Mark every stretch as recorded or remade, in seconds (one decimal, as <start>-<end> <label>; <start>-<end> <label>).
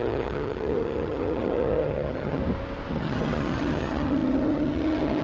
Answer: 0.0-2.4 remade; 2.4-2.9 recorded; 2.9-5.2 remade